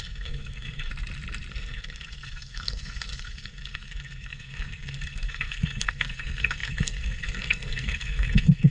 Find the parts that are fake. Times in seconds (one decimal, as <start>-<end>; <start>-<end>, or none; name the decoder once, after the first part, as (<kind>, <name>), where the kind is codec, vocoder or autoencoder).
0.0-0.9 (codec, SNAC); 1.5-8.7